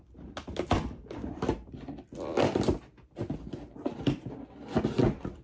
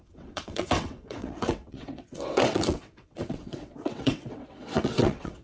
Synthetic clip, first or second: second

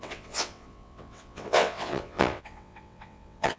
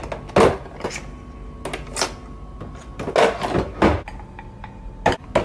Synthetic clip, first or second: first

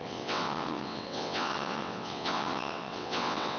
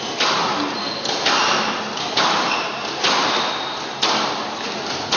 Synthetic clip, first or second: first